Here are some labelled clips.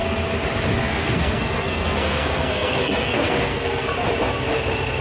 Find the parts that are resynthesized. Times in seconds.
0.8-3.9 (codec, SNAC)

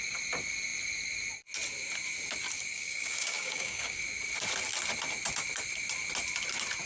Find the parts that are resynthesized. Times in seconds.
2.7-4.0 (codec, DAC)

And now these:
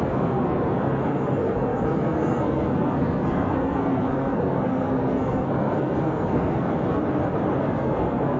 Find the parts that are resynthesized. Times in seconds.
0.0-7.0 (codec, SNAC); 7.6-8.4

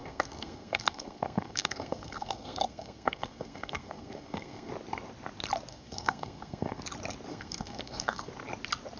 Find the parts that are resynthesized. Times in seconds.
0.0-4.7 (codec, SNAC); 5.7-6.8; 7.3-8.3